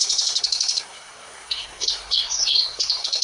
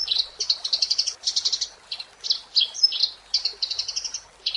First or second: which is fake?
first